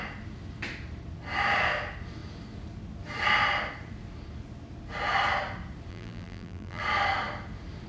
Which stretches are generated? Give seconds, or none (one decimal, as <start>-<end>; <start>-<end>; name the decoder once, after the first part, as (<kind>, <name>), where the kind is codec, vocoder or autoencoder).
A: 5.9-6.8 (vocoder, BigVGAN v2)